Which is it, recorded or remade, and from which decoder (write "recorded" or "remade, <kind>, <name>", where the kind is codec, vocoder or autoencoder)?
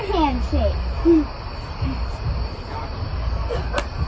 recorded